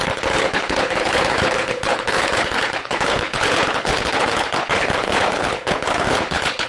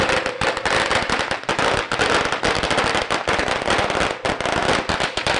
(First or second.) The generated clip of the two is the first